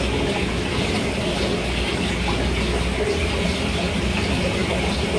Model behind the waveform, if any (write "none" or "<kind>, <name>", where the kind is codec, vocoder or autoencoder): none